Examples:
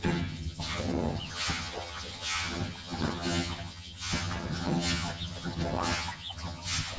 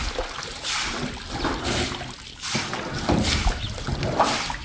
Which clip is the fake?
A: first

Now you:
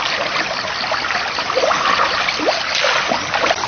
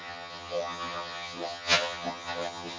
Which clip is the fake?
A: second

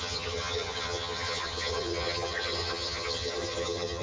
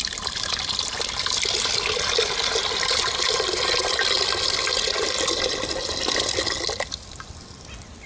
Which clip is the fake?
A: first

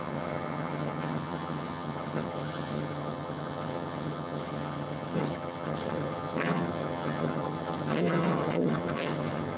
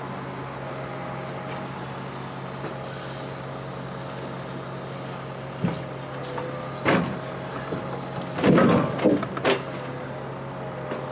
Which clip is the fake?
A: first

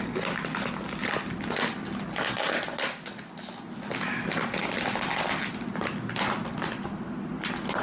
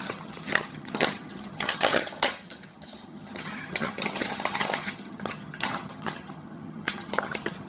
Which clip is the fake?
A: second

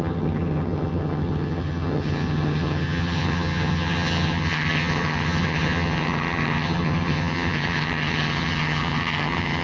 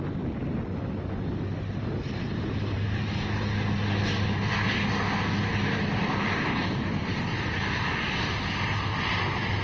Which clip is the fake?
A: first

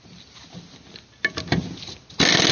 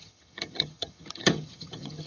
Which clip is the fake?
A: second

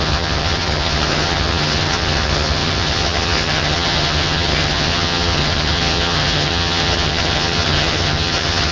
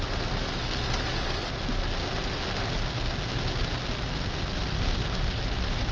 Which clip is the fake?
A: first